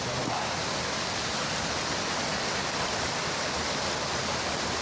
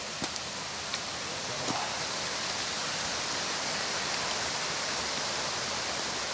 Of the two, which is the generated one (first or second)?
second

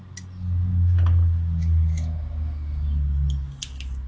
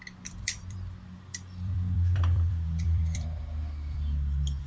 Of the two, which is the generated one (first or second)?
second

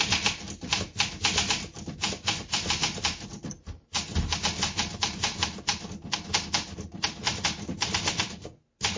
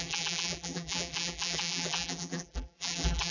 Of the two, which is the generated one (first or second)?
second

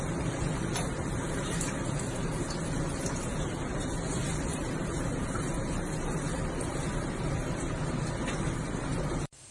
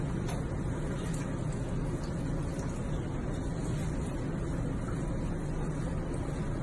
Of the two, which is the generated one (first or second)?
first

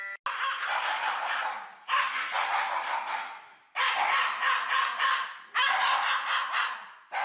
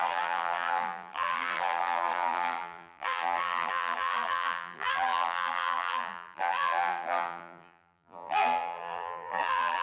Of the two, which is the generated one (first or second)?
second